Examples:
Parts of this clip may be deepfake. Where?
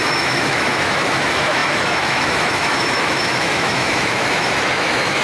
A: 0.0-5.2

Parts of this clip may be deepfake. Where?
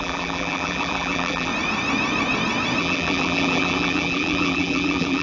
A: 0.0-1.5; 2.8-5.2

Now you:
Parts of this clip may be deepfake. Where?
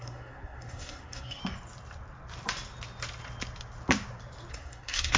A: 0.0-1.4; 4.5-5.2